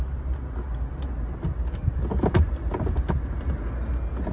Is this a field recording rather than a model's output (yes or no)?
yes